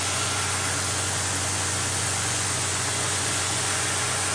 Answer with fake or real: fake